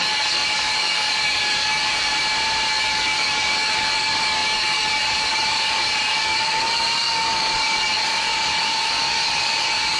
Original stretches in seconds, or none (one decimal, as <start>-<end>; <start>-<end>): 2.1-2.7